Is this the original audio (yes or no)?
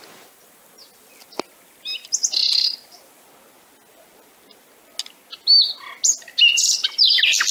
yes